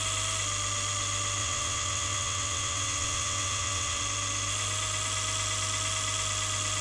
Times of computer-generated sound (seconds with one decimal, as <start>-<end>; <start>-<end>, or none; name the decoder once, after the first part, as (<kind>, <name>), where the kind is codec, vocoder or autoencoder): 1.4-4.0 (vocoder, WaveNeXt)